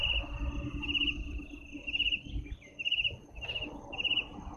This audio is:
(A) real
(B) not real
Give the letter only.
A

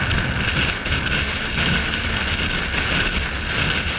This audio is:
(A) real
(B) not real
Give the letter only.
A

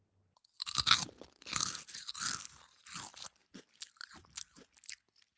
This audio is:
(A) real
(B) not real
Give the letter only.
A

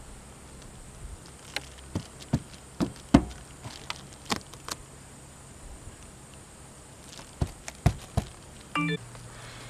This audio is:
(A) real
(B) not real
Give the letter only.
A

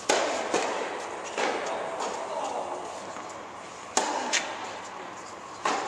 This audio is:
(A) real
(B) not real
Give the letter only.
A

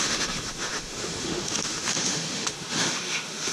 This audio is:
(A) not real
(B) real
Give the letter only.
A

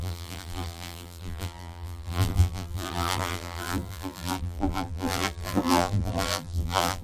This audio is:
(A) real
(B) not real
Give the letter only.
B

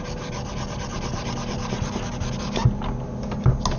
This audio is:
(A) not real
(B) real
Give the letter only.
B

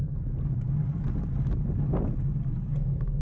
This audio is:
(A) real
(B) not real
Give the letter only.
A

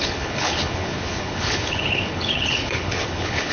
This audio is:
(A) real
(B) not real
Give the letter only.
B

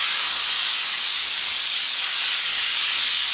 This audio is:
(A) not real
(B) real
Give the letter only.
A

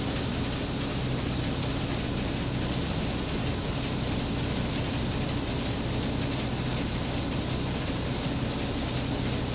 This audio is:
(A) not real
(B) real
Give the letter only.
B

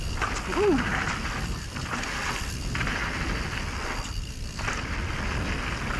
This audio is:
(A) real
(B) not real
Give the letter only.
A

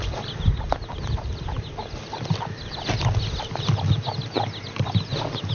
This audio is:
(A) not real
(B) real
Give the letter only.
B